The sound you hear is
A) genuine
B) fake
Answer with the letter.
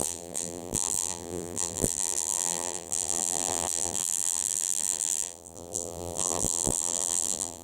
B